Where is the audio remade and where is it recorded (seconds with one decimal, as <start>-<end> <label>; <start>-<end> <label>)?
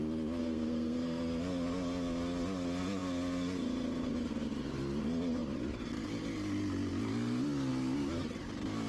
0.0-0.4 recorded; 0.4-1.2 remade; 1.2-8.9 recorded